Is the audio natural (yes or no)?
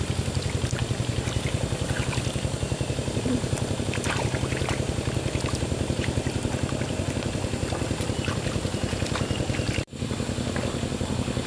yes